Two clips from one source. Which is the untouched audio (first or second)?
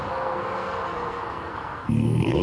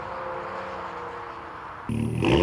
second